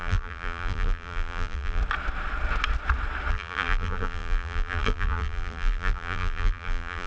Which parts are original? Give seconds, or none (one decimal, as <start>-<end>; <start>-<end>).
1.8-3.3